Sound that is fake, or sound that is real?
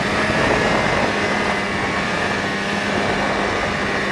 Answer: real